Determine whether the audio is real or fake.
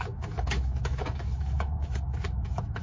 fake